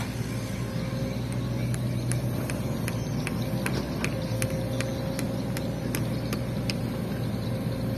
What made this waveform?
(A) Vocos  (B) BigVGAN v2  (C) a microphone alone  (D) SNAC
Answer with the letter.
C